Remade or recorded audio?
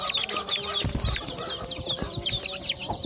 recorded